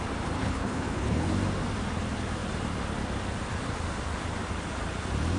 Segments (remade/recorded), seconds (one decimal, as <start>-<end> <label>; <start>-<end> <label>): 0.0-0.4 recorded; 0.4-1.3 remade; 1.3-5.4 recorded